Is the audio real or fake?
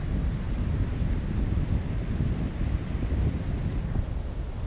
real